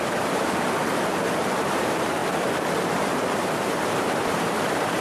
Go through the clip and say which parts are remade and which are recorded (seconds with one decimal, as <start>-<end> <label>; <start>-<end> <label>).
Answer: 0.0-0.8 remade; 0.8-1.6 recorded; 1.6-2.2 remade; 2.2-2.8 recorded; 2.8-5.0 remade